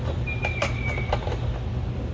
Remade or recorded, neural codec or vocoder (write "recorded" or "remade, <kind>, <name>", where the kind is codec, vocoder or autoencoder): recorded